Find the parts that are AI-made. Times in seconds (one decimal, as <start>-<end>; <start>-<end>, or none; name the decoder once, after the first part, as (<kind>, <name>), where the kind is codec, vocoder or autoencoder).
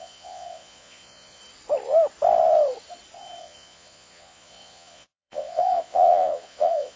0.0-1.4 (vocoder, Vocos); 3.4-7.0